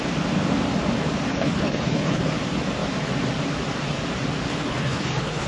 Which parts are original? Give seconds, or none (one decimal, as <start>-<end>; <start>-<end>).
0.0-1.3; 2.2-4.5